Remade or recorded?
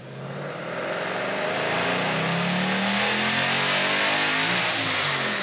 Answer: recorded